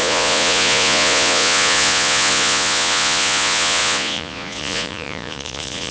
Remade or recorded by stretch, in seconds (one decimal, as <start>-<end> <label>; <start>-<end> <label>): 0.0-5.9 remade